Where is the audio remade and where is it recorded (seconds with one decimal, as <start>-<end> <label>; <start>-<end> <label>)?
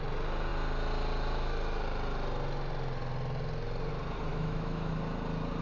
0.0-4.3 recorded; 4.3-4.9 remade; 4.9-5.6 recorded